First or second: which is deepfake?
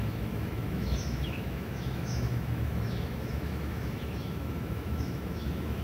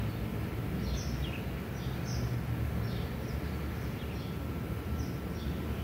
first